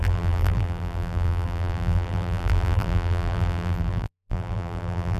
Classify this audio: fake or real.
fake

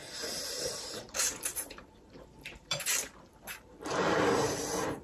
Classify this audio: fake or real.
fake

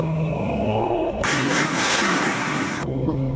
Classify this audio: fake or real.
fake